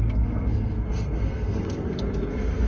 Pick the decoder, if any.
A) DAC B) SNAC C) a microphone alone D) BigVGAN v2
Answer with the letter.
B